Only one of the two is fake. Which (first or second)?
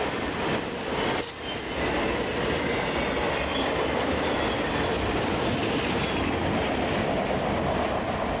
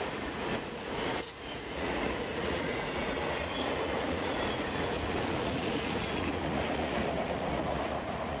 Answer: second